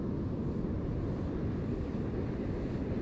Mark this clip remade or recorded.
recorded